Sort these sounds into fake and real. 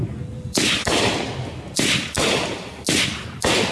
real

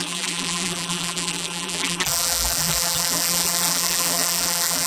fake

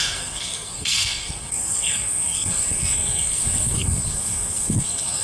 fake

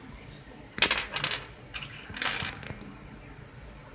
real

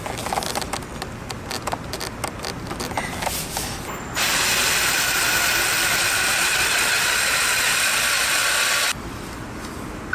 real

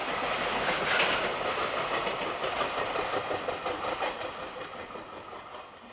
real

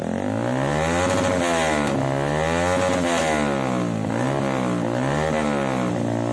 real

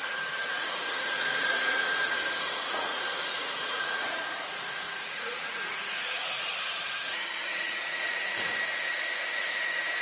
fake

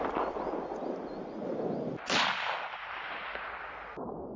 real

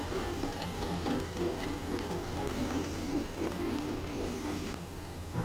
fake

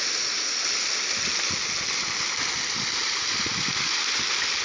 real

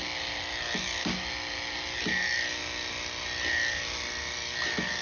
real